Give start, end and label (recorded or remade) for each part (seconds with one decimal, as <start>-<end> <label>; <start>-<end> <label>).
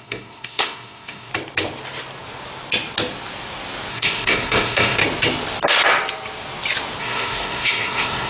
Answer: 0.0-1.3 remade; 1.3-3.9 recorded; 3.9-5.0 remade; 5.0-7.0 recorded; 7.0-8.3 remade